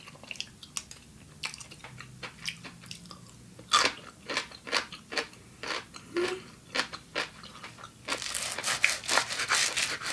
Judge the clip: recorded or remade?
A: recorded